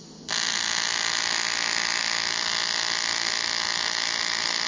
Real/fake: real